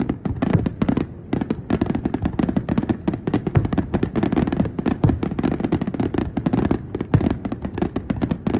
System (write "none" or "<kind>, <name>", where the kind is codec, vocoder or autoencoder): none